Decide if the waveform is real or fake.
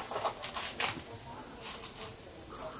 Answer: real